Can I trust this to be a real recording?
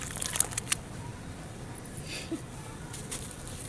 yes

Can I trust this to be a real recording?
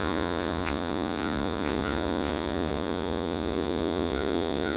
no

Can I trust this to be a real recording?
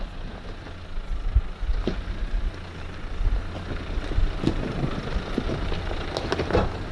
yes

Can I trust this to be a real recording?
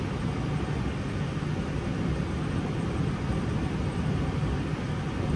yes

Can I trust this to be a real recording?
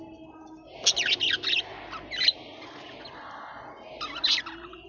yes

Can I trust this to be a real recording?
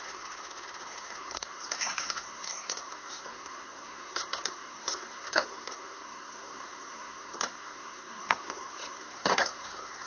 no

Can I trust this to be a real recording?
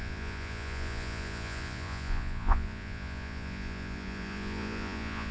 no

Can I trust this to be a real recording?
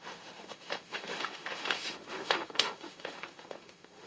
no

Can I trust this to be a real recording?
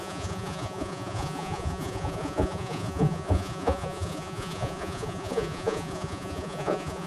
no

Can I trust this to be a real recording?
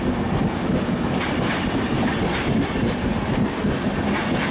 yes